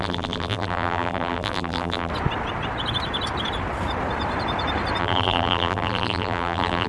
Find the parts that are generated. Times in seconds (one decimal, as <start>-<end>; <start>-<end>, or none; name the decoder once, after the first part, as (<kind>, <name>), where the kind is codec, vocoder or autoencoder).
0.0-2.1 (vocoder, BigVGAN v2); 5.0-6.9

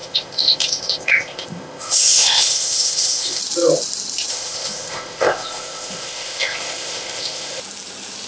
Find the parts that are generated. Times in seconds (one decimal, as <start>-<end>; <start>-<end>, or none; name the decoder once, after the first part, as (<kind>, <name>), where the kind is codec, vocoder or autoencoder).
0.0-3.4 (codec, ZipCodec); 4.3-7.6

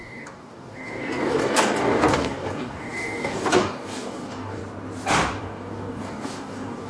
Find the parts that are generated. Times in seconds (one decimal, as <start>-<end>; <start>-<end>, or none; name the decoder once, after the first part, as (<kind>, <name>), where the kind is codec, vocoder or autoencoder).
0.0-4.6 (codec, DAC); 5.4-6.9

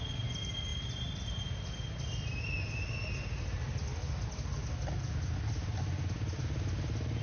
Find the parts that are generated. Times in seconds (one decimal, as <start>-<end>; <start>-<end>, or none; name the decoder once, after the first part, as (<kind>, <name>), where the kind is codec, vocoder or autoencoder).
none

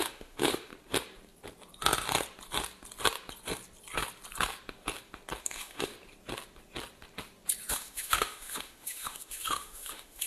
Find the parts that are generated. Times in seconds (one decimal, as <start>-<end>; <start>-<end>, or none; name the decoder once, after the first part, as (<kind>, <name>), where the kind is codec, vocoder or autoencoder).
0.0-0.7 (autoencoder, DAC-VAE); 5.4-5.9; 7.7-10.3